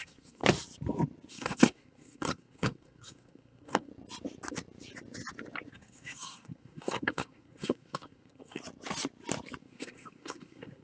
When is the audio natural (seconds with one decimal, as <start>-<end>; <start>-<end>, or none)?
0.4-1.3; 3.9-5.7; 8.6-9.6